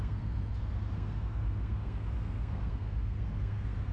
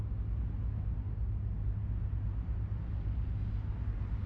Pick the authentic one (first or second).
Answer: second